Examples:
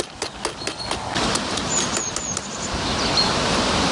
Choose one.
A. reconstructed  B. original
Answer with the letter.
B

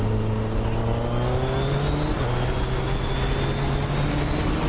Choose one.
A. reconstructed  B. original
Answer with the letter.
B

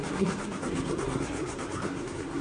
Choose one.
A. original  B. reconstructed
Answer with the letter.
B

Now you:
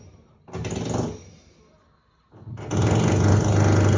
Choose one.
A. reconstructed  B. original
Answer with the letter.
B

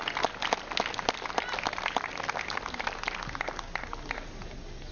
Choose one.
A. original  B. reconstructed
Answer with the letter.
A